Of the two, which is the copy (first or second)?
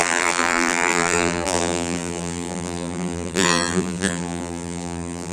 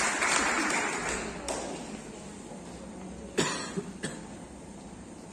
first